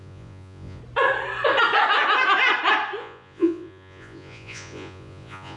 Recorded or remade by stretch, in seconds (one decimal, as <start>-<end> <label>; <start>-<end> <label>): 0.0-0.8 remade; 0.8-3.0 recorded; 3.0-5.6 remade